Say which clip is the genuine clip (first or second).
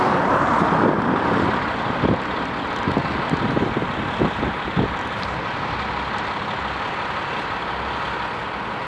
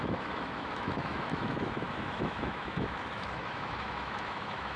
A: first